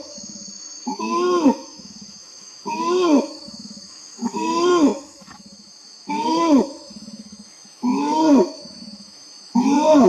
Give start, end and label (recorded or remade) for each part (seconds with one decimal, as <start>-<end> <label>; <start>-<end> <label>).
0.0-10.1 remade